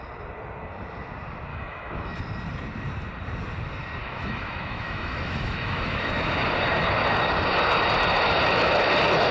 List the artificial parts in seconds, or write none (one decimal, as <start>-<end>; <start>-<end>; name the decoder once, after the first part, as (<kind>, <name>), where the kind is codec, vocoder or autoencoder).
1.5-2.2 (autoencoder, DAC-VAE); 4.0-6.1